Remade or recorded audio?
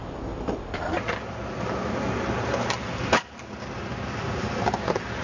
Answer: recorded